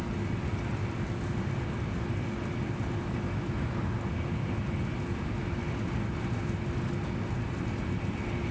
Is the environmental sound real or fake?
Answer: real